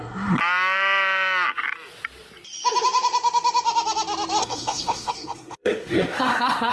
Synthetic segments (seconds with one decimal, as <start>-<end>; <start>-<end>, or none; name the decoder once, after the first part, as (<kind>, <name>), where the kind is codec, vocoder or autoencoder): 0.0-0.4 (codec, SNAC); 4.4-6.7